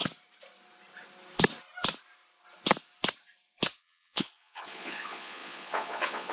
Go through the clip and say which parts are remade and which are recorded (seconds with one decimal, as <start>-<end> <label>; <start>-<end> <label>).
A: 0.0-3.8 recorded; 3.8-6.3 remade